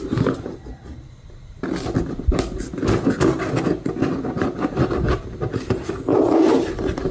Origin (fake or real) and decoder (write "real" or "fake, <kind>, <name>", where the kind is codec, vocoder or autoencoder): real